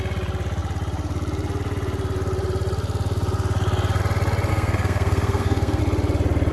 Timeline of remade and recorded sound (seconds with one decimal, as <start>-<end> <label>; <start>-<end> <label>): 0.0-4.5 recorded; 4.5-5.8 remade; 5.8-6.5 recorded